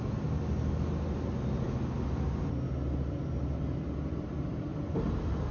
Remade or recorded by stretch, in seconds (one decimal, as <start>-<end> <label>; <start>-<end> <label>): 0.0-5.5 recorded